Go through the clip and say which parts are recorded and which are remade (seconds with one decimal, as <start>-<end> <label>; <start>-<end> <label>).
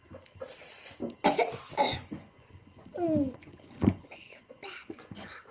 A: 0.0-1.9 recorded; 1.9-5.5 remade